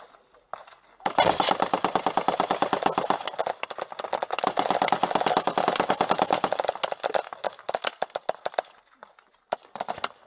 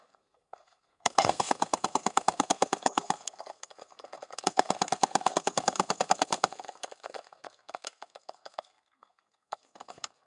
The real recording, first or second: first